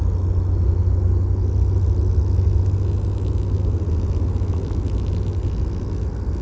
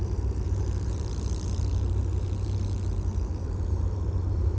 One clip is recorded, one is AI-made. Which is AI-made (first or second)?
second